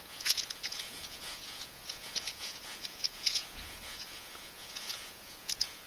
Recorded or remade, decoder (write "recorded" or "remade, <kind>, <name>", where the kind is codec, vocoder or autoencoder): remade, vocoder, Vocos